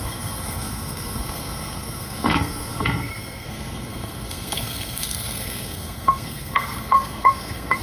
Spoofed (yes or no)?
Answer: yes